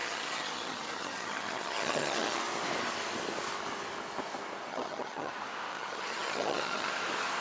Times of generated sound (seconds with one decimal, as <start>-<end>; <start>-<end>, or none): 0.0-2.4; 4.7-5.3; 5.7-6.9